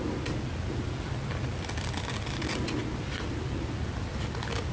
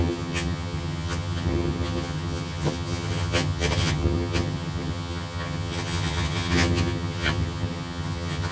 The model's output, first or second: second